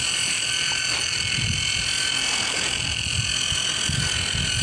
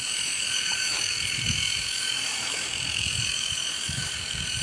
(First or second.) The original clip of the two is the first